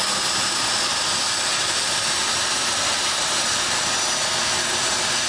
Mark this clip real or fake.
real